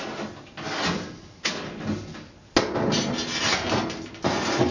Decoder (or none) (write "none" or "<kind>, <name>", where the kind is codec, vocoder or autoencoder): none